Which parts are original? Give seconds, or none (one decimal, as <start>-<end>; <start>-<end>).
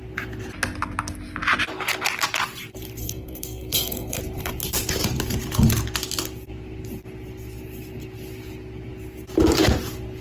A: 0.0-3.0; 4.2-10.2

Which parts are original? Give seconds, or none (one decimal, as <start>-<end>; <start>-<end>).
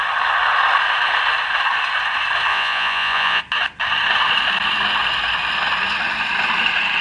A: 0.0-2.5; 3.4-7.0